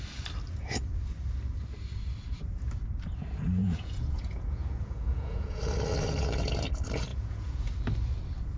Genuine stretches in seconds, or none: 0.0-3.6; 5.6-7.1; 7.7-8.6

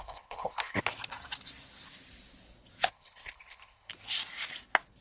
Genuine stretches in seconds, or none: 0.8-2.9; 3.9-5.0

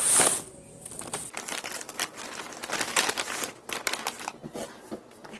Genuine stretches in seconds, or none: 0.0-5.4

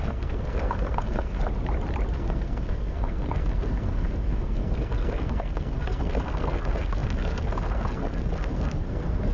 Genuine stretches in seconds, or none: 1.4-2.1

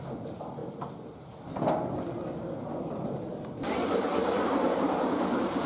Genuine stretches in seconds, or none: 0.0-5.7

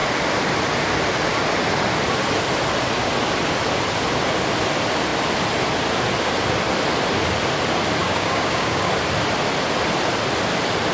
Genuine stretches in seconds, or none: 0.0-8.0; 8.9-10.9

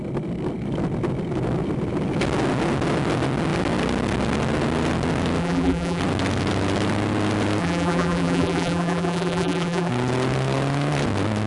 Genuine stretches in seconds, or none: 0.0-5.4; 6.0-7.6; 9.9-11.5

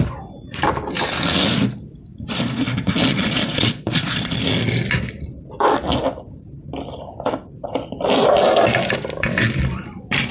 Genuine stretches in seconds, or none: 0.0-3.1; 4.4-10.3